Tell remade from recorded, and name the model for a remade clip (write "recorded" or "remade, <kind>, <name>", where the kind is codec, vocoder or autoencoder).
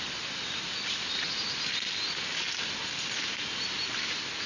recorded